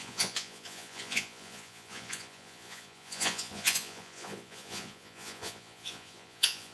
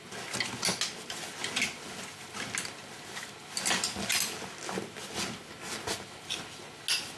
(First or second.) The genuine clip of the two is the second